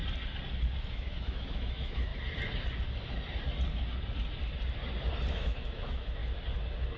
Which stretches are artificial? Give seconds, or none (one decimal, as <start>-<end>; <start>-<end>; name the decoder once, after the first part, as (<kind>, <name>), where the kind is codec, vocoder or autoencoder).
0.9-2.1 (autoencoder, DAC-VAE); 5.3-6.2